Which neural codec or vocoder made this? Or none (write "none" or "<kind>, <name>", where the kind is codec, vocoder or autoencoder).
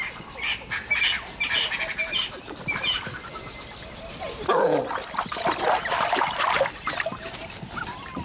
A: none